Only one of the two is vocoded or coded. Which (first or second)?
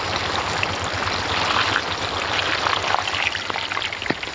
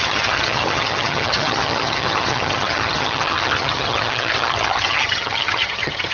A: second